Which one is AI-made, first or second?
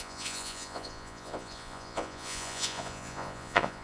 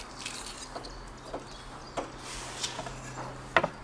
first